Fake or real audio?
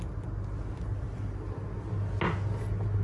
real